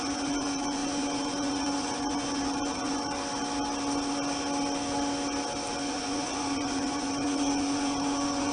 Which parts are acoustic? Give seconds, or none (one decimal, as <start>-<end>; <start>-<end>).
3.2-5.9